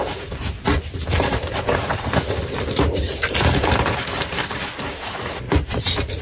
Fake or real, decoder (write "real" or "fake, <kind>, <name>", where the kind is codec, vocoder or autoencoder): fake, vocoder, BigVGAN v2